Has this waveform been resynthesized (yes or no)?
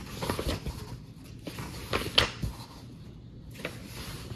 no